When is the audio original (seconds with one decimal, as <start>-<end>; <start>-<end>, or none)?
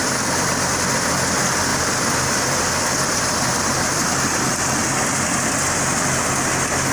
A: 0.5-1.7; 5.2-6.9